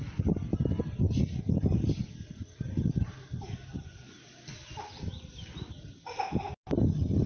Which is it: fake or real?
real